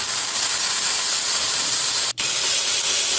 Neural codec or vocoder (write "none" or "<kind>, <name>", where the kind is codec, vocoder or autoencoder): vocoder, BigVGAN v2